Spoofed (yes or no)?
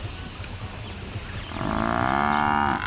no